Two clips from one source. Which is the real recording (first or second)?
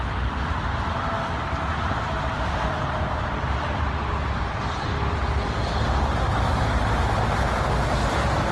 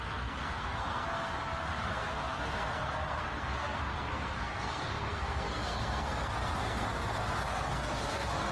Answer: first